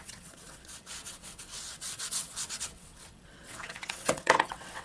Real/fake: fake